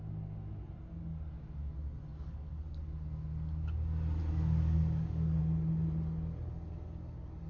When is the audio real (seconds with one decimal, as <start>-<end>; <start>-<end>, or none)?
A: 0.0-2.1; 2.8-4.2; 5.4-7.5